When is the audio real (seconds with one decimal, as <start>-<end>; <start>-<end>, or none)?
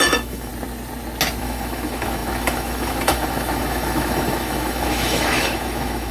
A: 0.5-1.4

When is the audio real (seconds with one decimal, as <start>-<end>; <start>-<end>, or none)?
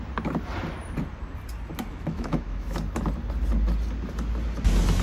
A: 0.0-1.9; 2.8-5.0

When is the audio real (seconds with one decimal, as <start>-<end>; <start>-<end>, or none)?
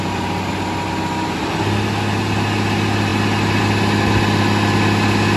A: 0.0-5.4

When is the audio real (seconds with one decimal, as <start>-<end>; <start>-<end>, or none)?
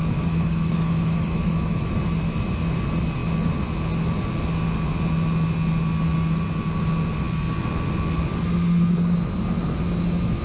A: 1.9-10.4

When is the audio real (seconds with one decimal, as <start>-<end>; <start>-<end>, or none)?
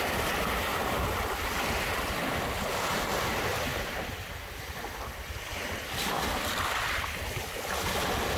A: 0.0-8.4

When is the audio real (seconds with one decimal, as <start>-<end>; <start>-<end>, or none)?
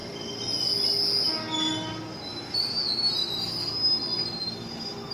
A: 0.0-5.1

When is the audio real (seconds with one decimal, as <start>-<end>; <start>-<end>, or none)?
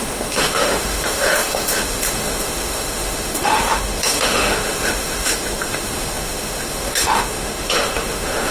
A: none